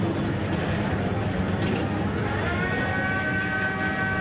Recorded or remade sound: recorded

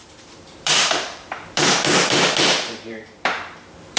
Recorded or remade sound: remade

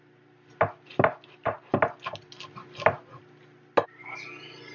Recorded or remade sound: recorded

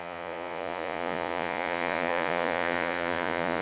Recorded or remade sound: remade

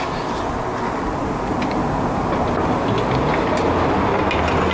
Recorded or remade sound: recorded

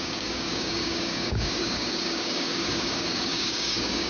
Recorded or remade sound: remade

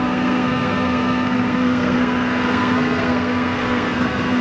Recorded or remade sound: remade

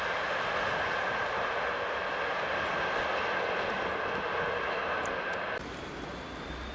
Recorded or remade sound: recorded